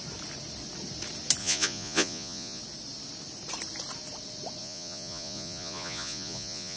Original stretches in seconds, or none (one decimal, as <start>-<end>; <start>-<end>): 0.0-1.4; 2.6-4.6